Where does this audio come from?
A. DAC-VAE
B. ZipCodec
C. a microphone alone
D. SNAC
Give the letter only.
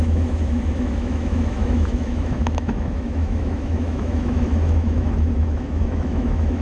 A